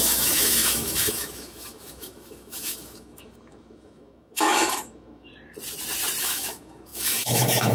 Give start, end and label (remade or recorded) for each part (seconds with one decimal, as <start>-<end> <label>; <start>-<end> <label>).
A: 0.0-5.3 remade; 5.3-6.2 recorded; 6.2-7.7 remade